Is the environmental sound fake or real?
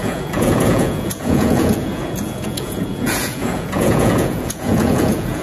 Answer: fake